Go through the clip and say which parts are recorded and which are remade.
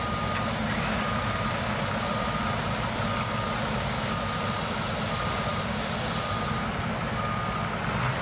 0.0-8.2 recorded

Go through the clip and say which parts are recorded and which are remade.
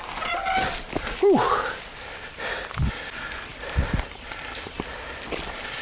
0.0-5.8 recorded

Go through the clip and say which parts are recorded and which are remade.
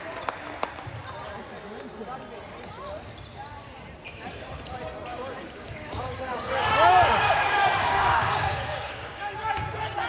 0.0-5.1 recorded; 5.1-9.6 remade; 9.6-10.1 recorded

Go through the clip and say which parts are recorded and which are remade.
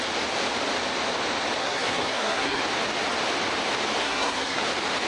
0.0-1.6 recorded; 1.6-2.6 remade; 2.6-4.0 recorded; 4.0-4.6 remade; 4.6-5.1 recorded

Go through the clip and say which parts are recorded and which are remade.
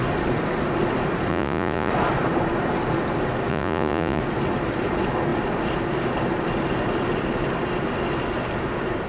0.0-1.3 recorded; 1.3-1.9 remade; 1.9-3.5 recorded; 3.5-4.2 remade; 4.2-9.1 recorded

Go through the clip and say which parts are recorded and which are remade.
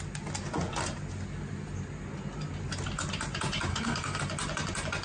0.0-3.7 recorded; 3.7-4.2 remade; 4.2-5.0 recorded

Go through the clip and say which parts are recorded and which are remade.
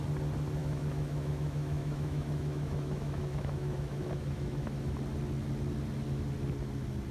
0.0-0.6 recorded; 0.6-4.9 remade; 4.9-7.1 recorded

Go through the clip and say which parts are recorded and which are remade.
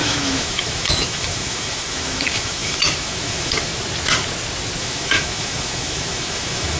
0.0-3.7 remade; 3.7-4.8 recorded; 4.8-6.8 remade